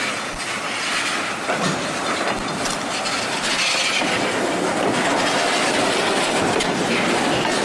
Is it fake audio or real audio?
real